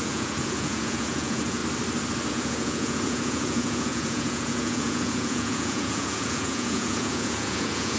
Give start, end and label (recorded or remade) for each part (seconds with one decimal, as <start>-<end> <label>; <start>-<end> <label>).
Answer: 0.0-1.6 remade; 1.6-2.3 recorded; 2.3-8.0 remade